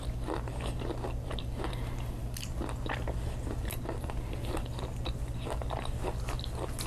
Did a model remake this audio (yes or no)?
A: no